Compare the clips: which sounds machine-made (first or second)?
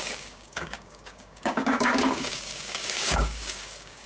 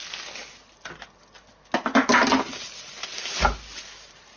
first